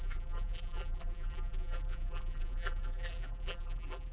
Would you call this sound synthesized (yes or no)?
yes